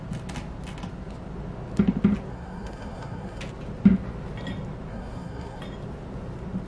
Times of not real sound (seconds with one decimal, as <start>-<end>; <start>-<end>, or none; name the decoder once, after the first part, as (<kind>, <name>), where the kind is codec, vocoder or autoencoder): 2.3-3.4 (codec, SNAC); 4.9-5.6